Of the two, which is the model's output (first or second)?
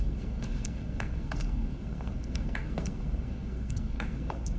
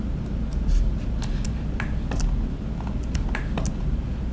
first